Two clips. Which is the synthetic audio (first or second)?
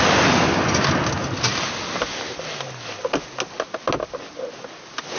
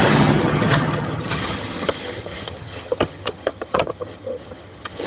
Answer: second